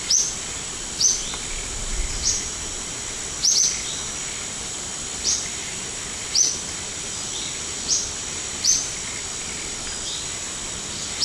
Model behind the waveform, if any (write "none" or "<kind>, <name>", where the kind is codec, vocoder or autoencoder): none